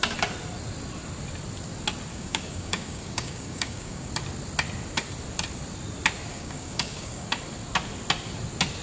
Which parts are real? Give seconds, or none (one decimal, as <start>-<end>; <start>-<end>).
0.0-2.1; 4.1-6.3; 7.3-8.8